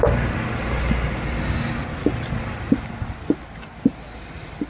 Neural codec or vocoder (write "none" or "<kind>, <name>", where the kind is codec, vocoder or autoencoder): none